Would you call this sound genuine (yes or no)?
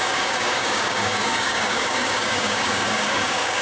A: no